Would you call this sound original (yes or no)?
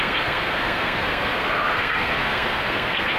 no